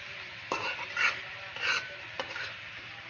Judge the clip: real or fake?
fake